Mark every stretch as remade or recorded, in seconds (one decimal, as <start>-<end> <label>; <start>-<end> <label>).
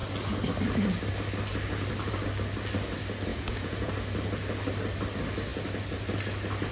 0.0-3.3 recorded; 3.3-3.9 remade; 3.9-6.7 recorded